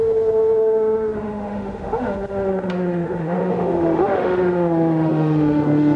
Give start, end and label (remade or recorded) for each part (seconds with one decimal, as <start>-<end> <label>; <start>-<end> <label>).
0.0-6.0 remade